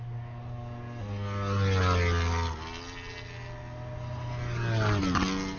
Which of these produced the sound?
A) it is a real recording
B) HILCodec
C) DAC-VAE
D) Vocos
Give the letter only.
A